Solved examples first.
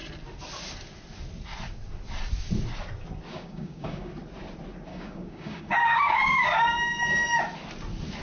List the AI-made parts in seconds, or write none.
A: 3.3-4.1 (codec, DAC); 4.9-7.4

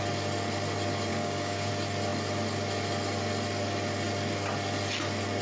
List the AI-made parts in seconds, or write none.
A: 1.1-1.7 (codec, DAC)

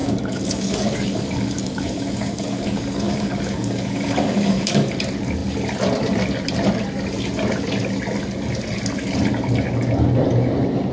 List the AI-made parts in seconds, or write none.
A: 0.0-4.9 (codec, DAC)

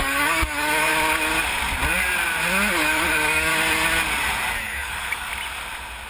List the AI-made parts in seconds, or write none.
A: 0.0-0.9 (codec, DAC); 2.8-3.5; 4.6-5.3

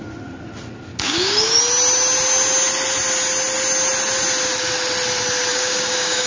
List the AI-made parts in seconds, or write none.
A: 0.9-1.6 (codec, DAC); 5.5-6.3

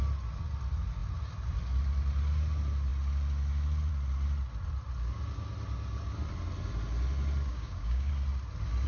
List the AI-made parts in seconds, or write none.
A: 7.5-8.1 (codec, DAC)